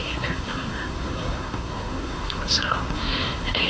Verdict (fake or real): fake